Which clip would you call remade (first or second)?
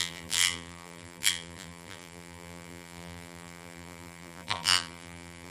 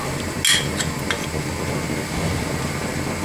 first